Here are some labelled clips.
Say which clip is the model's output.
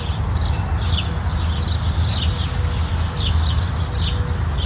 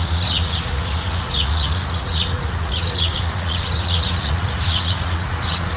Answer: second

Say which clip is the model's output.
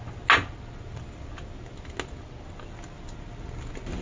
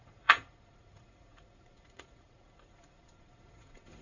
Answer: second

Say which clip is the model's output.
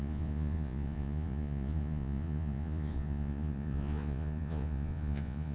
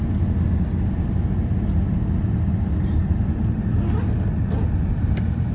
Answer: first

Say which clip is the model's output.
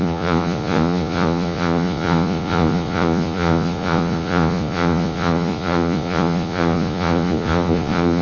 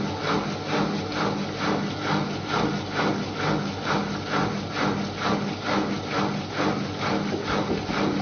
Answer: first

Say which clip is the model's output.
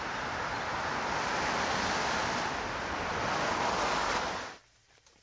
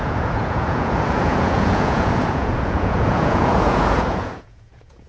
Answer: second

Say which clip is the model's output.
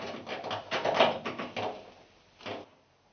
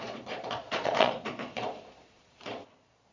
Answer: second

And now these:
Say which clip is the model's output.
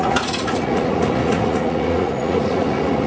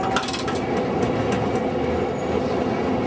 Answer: first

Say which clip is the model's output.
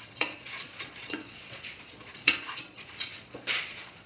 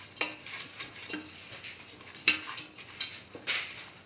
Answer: first